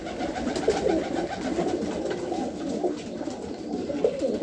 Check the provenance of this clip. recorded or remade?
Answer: recorded